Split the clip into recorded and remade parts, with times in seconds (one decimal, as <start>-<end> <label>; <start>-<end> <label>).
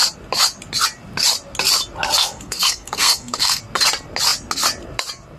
0.0-2.2 recorded; 2.2-3.6 remade; 3.6-5.4 recorded